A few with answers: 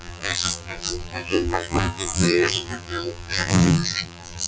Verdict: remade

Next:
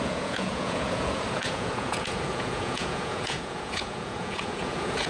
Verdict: remade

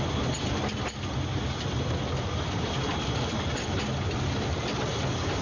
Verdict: recorded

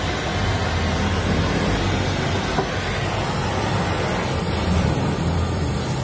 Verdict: recorded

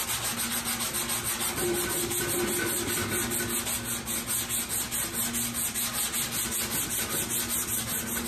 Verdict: recorded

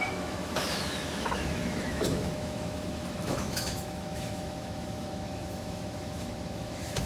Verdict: remade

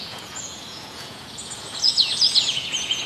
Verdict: remade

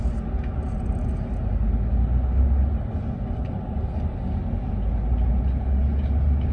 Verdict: recorded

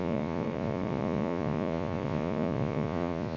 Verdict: remade